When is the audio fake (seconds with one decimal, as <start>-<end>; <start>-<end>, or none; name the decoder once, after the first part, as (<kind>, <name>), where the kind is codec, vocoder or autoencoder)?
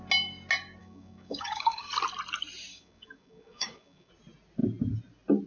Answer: 0.8-1.9 (codec, DAC); 2.7-4.1